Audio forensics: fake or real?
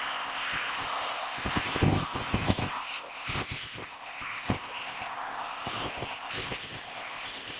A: fake